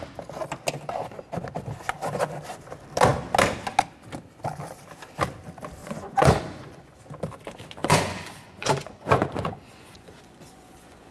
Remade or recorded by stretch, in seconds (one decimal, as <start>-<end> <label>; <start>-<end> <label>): 0.0-5.8 recorded; 5.8-7.0 remade; 7.0-7.8 recorded; 7.8-11.1 remade